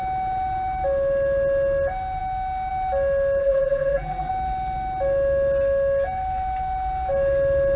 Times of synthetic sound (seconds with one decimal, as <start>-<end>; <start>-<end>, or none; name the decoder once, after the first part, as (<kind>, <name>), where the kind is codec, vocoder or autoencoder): 3.4-4.3 (vocoder, BigVGAN v2)